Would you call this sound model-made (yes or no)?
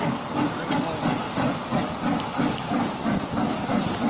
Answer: no